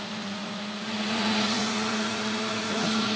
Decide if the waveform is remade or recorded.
remade